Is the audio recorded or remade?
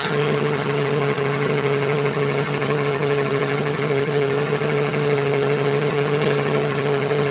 remade